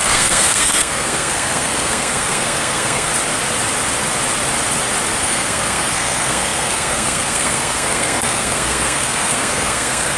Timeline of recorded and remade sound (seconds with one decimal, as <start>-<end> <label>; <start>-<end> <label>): 0.0-3.1 remade; 3.1-5.2 recorded; 5.2-10.2 remade